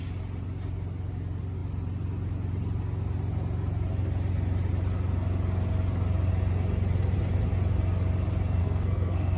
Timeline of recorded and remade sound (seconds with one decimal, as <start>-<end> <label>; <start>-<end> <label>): 0.0-8.6 recorded; 8.6-9.4 remade